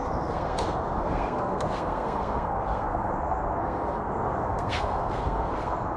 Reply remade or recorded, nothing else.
remade